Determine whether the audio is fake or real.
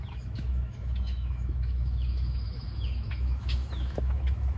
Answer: fake